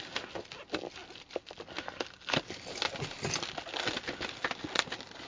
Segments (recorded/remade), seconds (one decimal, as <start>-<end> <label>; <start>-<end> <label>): 0.0-5.3 recorded